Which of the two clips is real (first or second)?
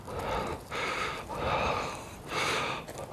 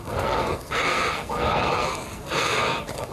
first